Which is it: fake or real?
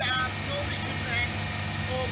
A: real